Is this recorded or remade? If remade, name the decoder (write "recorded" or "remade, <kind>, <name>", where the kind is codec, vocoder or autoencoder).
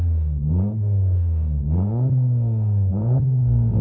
remade, codec, SNAC